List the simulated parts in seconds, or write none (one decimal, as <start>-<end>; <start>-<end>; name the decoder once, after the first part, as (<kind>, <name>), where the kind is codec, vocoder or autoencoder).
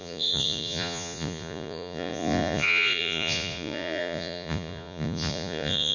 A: 0.0-5.9 (vocoder, Vocos)